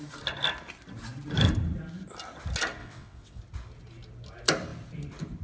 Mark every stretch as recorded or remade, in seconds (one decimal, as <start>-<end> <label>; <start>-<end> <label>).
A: 0.0-2.8 recorded; 2.8-3.4 remade; 3.4-5.4 recorded